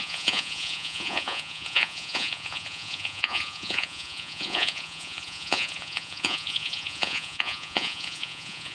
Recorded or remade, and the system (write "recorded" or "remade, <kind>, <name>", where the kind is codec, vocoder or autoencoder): remade, vocoder, Vocos